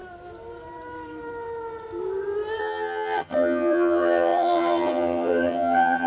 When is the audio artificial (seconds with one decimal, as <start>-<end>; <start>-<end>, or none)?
2.6-6.1